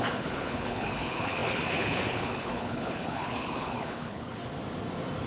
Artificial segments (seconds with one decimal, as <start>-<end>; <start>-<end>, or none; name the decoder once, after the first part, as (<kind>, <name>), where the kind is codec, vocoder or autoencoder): 0.0-4.4 (codec, HILCodec)